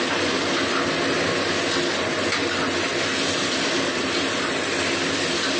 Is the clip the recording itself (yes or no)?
yes